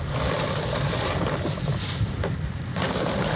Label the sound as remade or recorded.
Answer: recorded